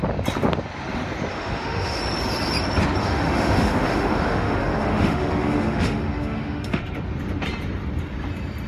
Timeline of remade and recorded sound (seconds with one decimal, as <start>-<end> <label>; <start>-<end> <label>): 0.0-1.3 recorded; 1.3-2.0 remade; 2.0-3.0 recorded; 3.0-6.8 remade; 6.8-8.7 recorded